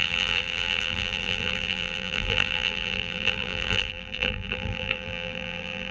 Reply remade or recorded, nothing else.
remade